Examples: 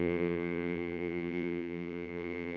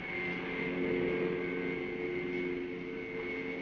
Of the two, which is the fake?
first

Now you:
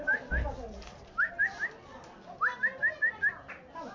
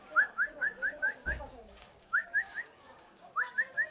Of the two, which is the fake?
second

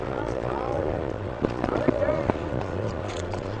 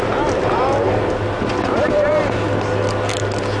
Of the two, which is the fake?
first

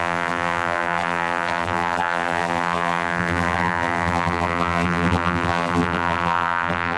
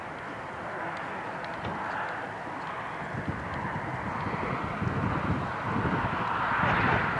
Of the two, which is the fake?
first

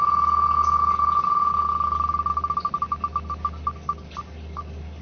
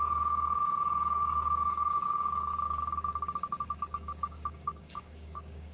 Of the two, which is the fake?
second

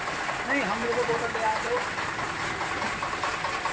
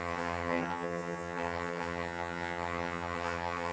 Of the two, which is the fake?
second